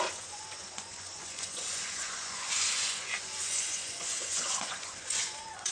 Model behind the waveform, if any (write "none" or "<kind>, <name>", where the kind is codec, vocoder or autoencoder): vocoder, Vocos